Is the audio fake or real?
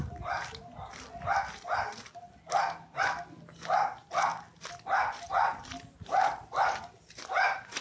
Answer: real